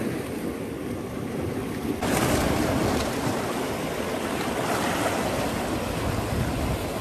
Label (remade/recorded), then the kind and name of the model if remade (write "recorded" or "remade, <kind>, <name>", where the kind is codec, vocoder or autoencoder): recorded